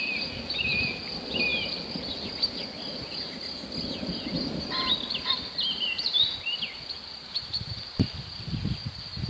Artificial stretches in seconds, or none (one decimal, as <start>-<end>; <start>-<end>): none